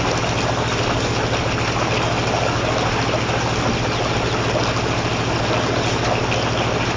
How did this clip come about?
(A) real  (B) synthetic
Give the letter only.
A